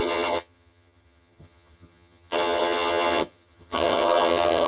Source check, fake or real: fake